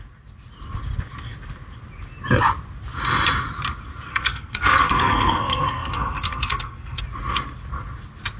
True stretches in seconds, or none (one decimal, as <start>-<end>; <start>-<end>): 0.0-4.1; 7.0-8.4